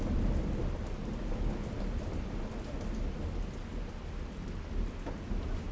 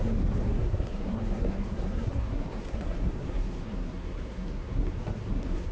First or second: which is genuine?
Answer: first